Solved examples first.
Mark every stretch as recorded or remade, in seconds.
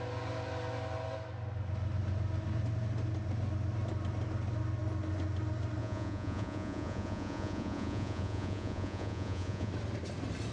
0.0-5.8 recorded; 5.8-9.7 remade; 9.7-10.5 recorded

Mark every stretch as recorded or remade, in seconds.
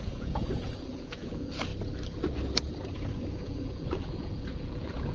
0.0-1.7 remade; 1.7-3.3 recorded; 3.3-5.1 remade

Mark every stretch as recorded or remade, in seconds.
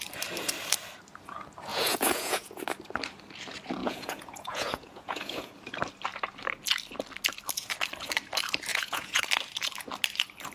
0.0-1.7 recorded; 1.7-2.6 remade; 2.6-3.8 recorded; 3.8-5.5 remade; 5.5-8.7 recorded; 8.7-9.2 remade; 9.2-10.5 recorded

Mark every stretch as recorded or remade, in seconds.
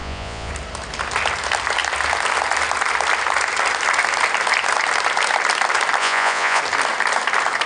0.0-0.5 remade; 0.5-6.0 recorded; 6.0-6.6 remade; 6.6-7.7 recorded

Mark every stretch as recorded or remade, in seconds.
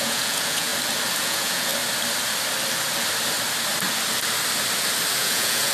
0.0-0.7 remade; 0.7-1.2 recorded; 1.2-1.7 remade; 1.7-5.1 recorded; 5.1-5.7 remade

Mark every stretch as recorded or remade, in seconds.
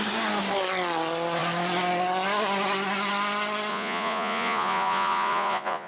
0.0-3.7 recorded; 3.7-5.9 remade